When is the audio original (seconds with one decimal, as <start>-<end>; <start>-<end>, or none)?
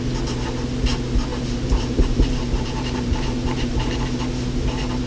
0.0-1.3; 4.0-5.1